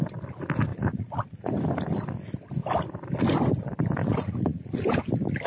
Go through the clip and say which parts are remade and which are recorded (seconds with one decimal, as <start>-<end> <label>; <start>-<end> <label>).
0.0-0.7 recorded; 0.7-1.5 remade; 1.5-4.0 recorded; 4.0-4.8 remade; 4.8-5.5 recorded